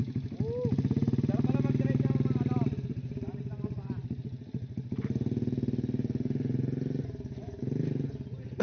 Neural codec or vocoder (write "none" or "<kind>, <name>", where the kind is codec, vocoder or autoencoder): none